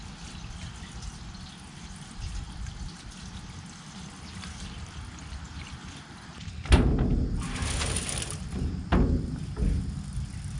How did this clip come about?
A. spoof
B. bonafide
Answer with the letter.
B